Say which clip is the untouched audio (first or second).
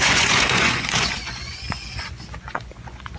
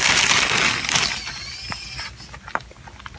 second